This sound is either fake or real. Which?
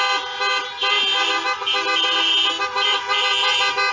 real